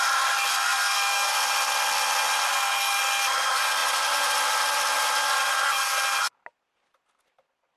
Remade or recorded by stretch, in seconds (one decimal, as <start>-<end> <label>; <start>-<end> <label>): 0.0-0.5 recorded; 0.5-1.3 remade; 1.3-2.5 recorded; 2.5-3.0 remade; 3.0-7.8 recorded

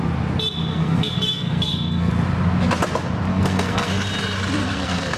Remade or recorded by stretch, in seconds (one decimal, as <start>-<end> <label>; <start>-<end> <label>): 0.0-0.7 recorded; 0.7-2.1 remade; 2.1-3.3 recorded; 3.3-3.9 remade; 3.9-4.6 recorded; 4.6-5.2 remade

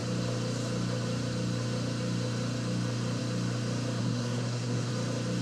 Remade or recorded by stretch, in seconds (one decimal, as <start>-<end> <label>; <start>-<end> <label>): 0.0-4.0 recorded; 4.0-4.9 remade; 4.9-5.4 recorded

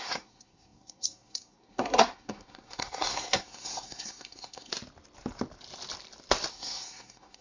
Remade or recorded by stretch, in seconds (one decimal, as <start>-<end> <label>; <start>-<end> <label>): 0.0-4.7 remade; 4.7-6.5 recorded; 6.5-7.4 remade